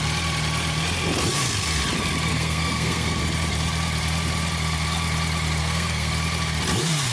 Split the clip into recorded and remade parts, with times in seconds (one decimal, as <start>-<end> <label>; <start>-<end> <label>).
0.0-2.3 recorded; 2.3-3.2 remade; 3.2-5.6 recorded; 5.6-6.1 remade; 6.1-7.1 recorded